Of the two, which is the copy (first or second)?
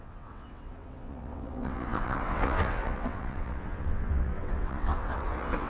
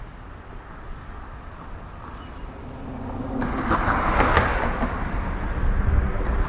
first